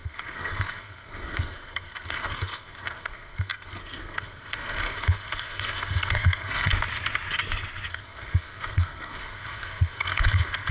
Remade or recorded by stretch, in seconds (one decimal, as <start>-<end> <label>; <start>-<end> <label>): 0.0-6.7 remade; 6.7-7.9 recorded; 7.9-10.7 remade